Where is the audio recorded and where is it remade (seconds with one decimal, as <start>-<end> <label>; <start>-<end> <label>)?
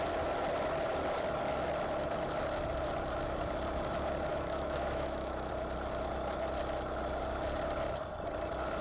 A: 0.0-4.3 recorded; 4.3-5.5 remade; 5.5-8.8 recorded